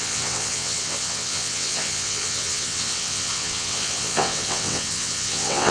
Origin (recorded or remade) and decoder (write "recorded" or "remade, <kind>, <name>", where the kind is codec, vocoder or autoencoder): remade, vocoder, WaveNeXt